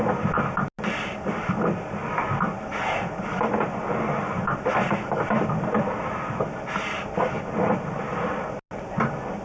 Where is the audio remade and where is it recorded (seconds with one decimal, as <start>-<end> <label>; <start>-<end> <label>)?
0.0-9.4 recorded